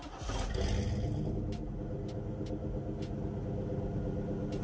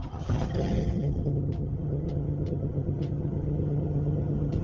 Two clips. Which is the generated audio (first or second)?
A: second